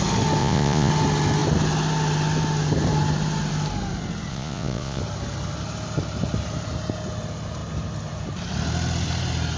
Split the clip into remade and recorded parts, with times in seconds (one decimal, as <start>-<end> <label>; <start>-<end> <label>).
0.0-0.4 recorded; 0.4-0.9 remade; 0.9-4.3 recorded; 4.3-5.0 remade; 5.0-9.6 recorded